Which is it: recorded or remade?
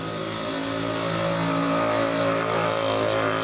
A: recorded